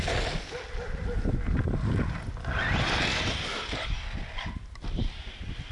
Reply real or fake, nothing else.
real